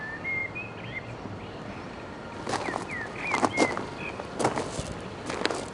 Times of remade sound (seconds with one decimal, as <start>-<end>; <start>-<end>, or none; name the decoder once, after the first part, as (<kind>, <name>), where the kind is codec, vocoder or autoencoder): none